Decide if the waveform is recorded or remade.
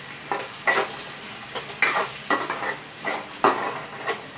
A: recorded